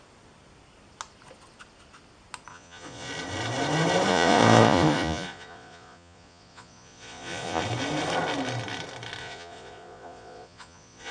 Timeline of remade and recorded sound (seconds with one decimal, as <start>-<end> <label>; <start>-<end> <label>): 0.0-2.5 recorded; 2.5-3.1 remade; 3.1-4.1 recorded; 4.1-7.6 remade; 7.6-9.2 recorded; 9.2-11.1 remade